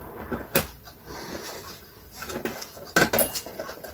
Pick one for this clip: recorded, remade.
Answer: recorded